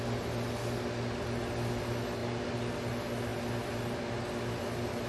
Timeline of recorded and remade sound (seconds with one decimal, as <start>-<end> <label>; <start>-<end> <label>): 0.0-5.1 recorded